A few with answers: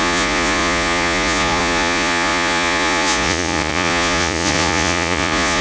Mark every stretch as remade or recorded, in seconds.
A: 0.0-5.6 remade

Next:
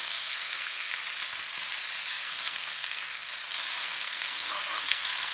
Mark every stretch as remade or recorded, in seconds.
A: 0.0-1.0 remade; 1.0-2.1 recorded; 2.1-3.3 remade; 3.3-3.8 recorded; 3.8-5.3 remade

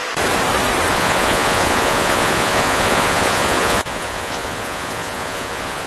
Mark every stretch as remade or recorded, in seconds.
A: 0.0-0.9 recorded; 0.9-5.9 remade

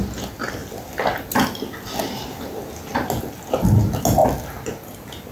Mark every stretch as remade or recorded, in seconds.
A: 0.0-5.3 recorded

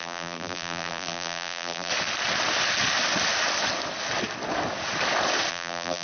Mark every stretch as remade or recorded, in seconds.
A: 0.0-1.9 remade; 1.9-5.5 recorded; 5.5-6.0 remade

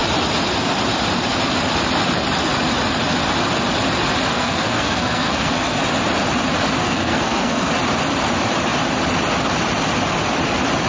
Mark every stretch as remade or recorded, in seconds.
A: 0.0-4.3 recorded; 4.3-5.8 remade; 5.8-6.8 recorded; 6.8-7.7 remade; 7.7-10.9 recorded